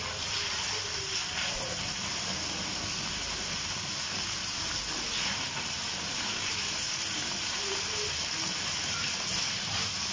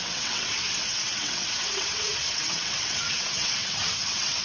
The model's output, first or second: second